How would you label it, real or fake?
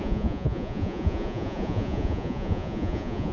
fake